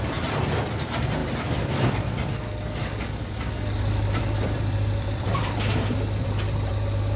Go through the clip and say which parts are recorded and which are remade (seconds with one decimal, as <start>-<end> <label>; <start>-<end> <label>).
0.0-1.2 recorded; 1.2-1.9 remade; 1.9-2.8 recorded; 2.8-6.7 remade; 6.7-7.2 recorded